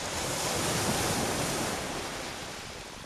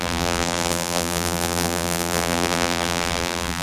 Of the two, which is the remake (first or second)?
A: second